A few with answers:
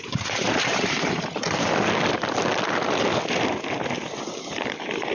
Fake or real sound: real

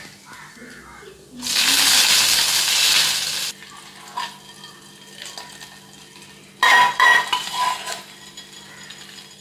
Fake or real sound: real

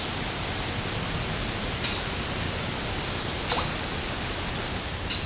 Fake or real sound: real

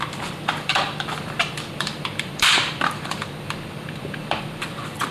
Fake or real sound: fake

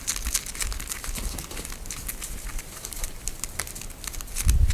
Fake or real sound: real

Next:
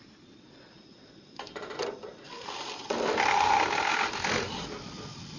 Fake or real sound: real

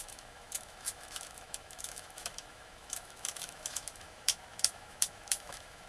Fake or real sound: fake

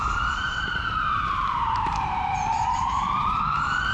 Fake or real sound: fake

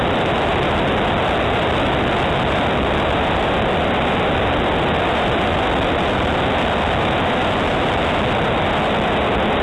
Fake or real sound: real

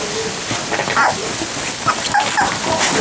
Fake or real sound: real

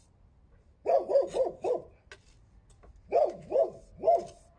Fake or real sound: real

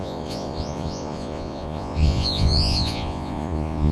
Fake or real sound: fake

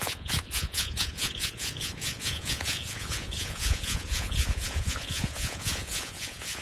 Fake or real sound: fake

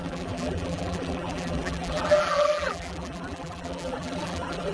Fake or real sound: fake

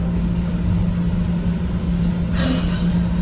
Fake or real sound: real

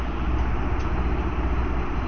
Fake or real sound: real